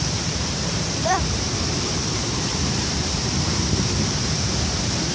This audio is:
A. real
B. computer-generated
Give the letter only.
B